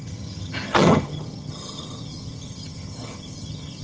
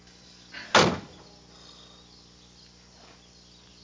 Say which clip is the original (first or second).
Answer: second